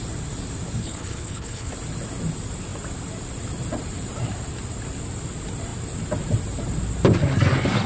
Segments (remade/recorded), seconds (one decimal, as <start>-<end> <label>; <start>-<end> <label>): 0.0-0.8 recorded; 0.8-1.7 remade; 1.7-7.9 recorded